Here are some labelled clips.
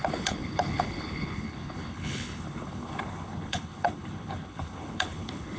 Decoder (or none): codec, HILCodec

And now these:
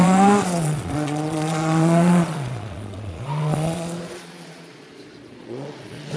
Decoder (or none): vocoder, Vocos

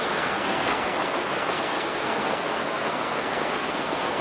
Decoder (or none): codec, SNAC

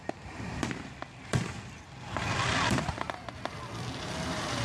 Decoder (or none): vocoder, BigVGAN v2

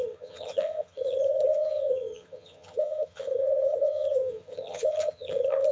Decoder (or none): vocoder, HiFi-GAN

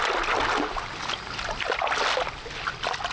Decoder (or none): none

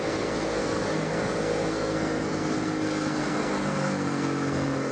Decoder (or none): codec, SNAC